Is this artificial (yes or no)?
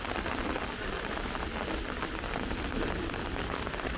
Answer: no